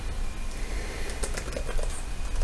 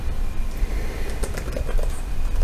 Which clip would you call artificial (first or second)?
second